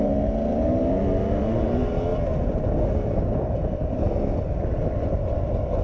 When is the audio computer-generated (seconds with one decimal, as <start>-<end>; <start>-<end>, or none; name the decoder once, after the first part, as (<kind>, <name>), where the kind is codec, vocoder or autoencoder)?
none